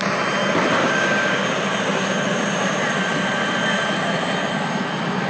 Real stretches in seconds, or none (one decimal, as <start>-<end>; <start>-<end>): 0.0-0.8; 1.4-5.3